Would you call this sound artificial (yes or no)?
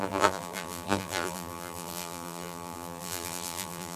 yes